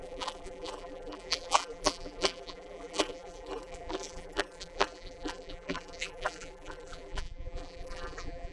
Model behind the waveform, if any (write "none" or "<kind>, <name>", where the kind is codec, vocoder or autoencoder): vocoder, BigVGAN v2